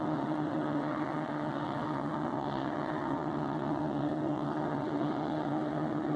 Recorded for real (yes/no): no